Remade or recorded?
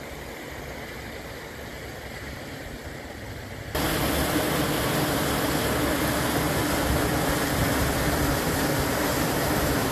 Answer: recorded